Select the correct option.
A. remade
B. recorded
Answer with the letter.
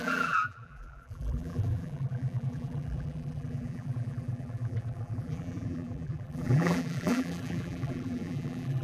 A